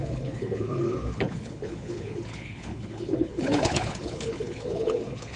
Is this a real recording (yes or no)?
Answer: no